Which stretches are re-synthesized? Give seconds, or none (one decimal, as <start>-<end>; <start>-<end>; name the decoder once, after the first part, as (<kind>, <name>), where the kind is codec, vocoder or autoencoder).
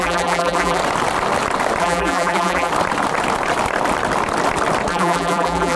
0.0-0.8 (vocoder, BigVGAN v2); 1.8-2.7; 4.9-5.8